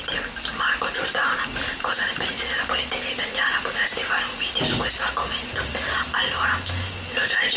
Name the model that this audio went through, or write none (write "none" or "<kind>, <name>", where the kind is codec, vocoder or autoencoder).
none